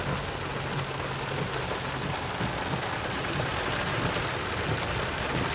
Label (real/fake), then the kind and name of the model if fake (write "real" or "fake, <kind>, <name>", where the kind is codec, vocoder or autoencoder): real